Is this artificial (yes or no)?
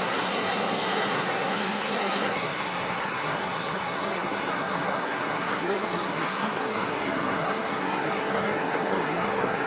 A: yes